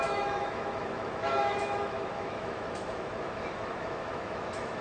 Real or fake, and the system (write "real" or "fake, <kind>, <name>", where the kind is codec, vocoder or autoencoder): fake, autoencoder, DAC-VAE